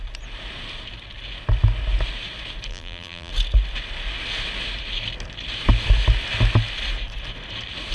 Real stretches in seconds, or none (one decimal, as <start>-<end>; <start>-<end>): 0.0-2.7; 3.3-7.9